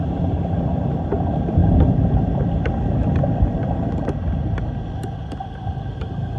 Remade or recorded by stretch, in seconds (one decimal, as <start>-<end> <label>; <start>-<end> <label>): 0.0-6.4 recorded